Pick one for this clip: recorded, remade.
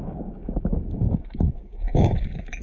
remade